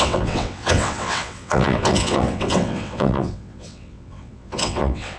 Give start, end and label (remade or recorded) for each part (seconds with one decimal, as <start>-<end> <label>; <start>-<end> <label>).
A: 0.0-5.2 remade